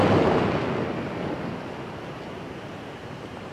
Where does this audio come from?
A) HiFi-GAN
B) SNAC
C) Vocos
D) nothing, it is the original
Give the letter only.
D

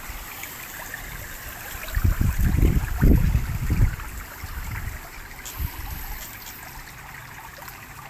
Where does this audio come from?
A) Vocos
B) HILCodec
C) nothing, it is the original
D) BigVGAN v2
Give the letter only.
C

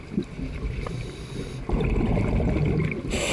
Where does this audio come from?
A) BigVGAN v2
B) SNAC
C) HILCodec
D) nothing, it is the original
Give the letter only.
D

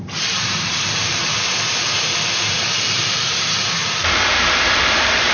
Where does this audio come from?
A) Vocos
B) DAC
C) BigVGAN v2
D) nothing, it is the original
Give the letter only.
C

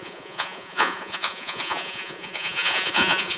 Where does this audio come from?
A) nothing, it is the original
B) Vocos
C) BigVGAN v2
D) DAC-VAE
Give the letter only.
B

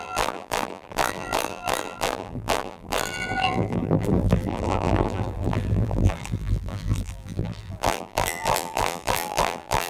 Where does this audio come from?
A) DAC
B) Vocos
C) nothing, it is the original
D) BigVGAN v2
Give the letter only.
D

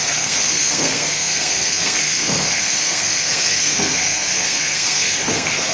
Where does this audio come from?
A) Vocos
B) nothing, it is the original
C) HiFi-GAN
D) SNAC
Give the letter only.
D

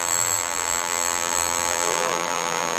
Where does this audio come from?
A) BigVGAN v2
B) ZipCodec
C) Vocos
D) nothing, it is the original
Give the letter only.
A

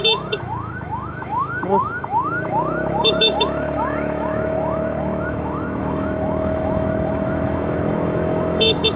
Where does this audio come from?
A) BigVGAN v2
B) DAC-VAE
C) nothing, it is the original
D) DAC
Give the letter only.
B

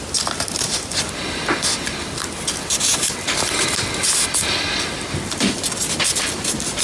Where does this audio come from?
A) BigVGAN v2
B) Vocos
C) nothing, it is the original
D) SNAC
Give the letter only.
C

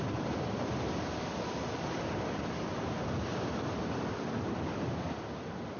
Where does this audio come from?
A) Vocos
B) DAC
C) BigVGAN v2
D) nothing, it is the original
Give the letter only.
C